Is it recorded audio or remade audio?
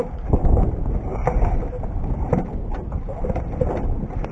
recorded